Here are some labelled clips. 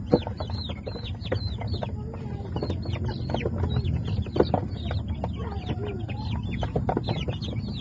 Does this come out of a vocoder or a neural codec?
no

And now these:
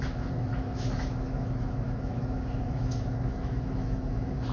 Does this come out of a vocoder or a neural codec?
yes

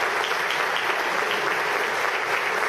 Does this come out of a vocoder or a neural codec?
no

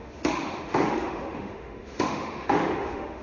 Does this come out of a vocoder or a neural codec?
yes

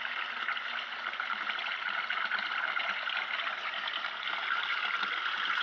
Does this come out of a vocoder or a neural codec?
no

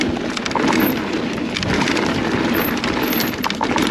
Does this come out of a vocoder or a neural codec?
no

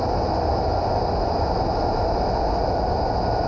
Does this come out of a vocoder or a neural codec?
no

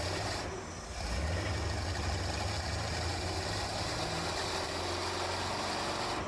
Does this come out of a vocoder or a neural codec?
no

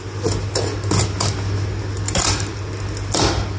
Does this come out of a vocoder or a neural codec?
no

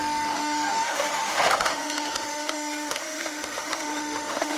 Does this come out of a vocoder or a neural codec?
yes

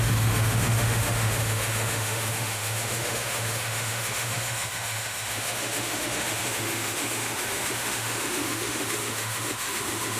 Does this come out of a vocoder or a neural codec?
yes